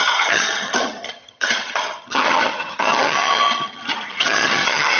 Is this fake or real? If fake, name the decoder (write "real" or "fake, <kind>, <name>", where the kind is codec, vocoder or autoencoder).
fake, vocoder, HiFi-GAN